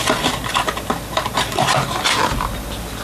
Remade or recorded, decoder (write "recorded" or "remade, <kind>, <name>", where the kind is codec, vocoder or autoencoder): recorded